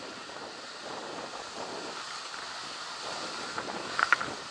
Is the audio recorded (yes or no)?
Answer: yes